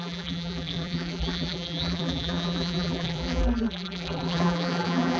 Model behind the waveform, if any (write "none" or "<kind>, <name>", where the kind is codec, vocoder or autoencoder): vocoder, BigVGAN v2